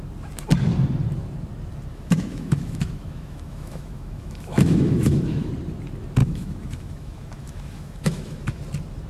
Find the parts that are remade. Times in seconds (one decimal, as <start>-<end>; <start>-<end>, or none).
1.9-5.5; 6.2-8.6